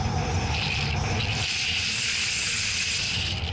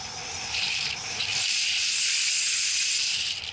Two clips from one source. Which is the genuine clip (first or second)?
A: first